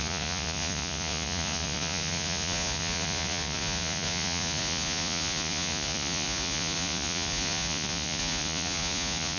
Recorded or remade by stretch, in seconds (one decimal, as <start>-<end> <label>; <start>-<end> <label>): 0.0-9.4 remade